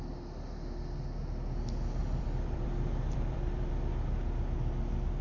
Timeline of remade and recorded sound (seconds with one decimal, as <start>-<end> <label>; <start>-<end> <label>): 0.0-2.0 recorded; 2.0-3.7 remade; 3.7-5.2 recorded